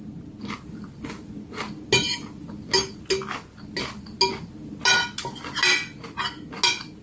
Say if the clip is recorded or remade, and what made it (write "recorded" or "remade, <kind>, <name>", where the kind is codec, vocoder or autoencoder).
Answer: recorded